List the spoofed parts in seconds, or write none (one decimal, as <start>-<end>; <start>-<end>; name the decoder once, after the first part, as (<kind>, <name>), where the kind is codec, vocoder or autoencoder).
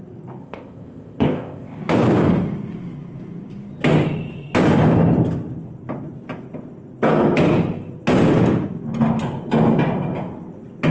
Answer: 0.4-1.8 (codec, ZipCodec)